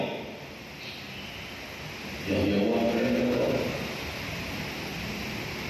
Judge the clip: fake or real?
real